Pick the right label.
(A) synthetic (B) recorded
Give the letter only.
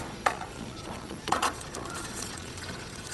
A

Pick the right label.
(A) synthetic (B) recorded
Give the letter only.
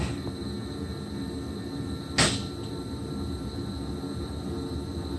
B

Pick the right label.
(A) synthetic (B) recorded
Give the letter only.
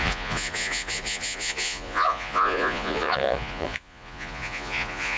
A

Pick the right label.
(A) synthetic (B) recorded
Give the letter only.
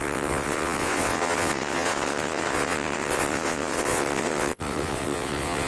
A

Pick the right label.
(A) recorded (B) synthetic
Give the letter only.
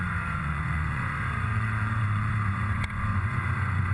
B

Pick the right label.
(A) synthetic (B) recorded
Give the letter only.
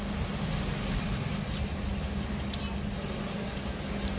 B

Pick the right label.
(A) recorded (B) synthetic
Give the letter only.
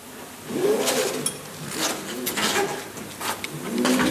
A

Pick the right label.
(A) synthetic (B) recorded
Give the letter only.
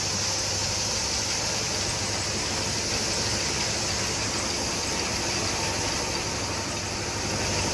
B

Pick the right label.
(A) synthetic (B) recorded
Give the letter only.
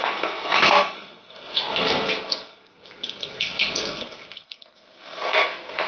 A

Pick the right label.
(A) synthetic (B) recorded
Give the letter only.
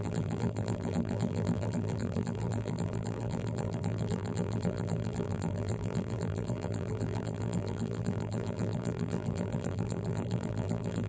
A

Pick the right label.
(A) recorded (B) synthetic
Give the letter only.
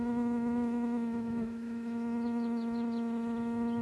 B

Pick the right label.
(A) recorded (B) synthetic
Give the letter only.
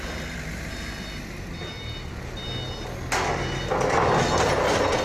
A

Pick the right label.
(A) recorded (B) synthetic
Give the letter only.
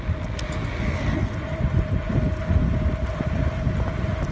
A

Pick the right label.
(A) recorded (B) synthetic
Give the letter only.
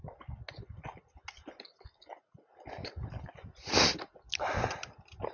A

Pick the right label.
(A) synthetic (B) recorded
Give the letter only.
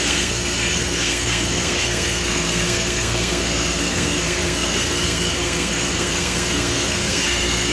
A